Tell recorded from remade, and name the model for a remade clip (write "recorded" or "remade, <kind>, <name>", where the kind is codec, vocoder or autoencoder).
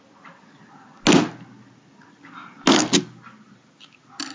recorded